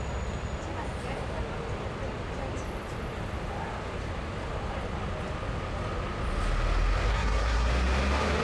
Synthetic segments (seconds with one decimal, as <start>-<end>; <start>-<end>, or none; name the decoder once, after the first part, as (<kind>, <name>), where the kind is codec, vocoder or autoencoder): 7.1-7.7 (codec, SNAC)